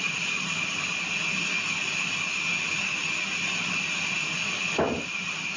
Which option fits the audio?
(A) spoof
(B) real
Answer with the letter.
B